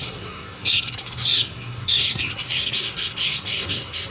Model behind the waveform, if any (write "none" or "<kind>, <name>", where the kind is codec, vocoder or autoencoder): codec, SNAC